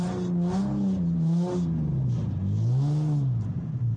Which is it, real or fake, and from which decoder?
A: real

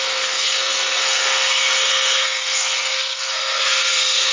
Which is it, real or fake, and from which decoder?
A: fake, codec, SNAC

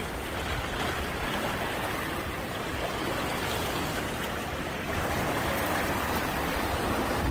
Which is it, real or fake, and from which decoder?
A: real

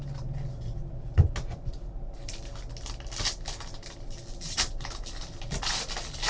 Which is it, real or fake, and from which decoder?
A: real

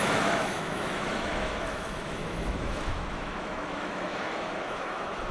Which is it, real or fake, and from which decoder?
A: fake, autoencoder, DAC-VAE